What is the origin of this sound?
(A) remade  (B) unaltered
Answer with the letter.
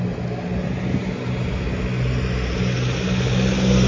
B